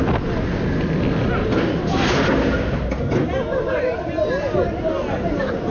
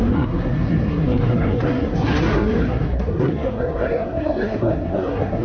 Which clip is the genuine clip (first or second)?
first